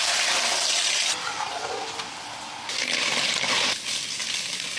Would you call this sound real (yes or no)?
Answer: yes